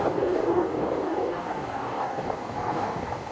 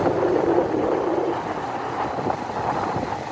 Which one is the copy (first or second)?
first